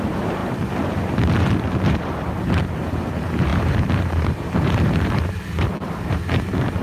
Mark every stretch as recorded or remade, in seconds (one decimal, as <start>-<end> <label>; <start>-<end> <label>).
0.0-6.8 remade